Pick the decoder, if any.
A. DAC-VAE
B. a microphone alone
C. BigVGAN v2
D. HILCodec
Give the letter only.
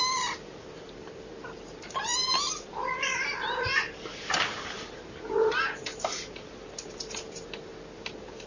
C